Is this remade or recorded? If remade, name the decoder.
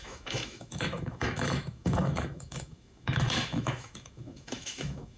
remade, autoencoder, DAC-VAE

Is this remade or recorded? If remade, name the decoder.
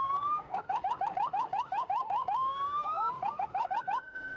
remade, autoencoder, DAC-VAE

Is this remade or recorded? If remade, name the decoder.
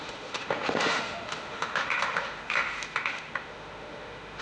remade, autoencoder, DAC-VAE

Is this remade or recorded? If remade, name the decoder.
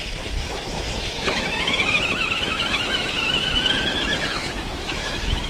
remade, autoencoder, DAC-VAE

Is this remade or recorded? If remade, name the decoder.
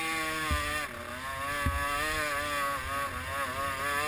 recorded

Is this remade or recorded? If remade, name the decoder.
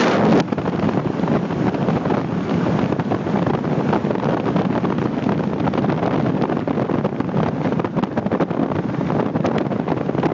recorded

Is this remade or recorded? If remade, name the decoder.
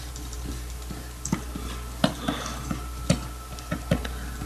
recorded